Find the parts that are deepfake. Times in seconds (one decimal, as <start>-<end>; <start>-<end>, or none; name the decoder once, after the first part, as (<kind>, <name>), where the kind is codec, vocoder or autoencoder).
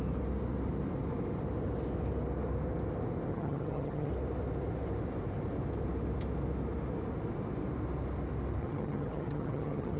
3.3-4.1 (vocoder, HiFi-GAN); 8.6-10.0